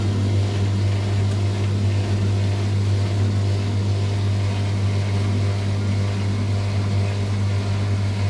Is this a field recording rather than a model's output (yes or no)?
yes